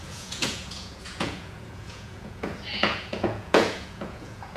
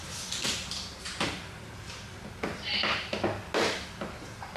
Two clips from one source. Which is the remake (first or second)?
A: first